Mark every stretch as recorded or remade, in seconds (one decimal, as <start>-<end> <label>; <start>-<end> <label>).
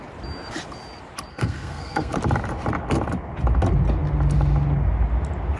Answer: 0.0-1.3 recorded; 1.3-2.2 remade; 2.2-5.6 recorded